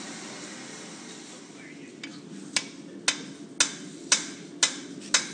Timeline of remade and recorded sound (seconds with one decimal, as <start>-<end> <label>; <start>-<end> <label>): 0.0-5.3 recorded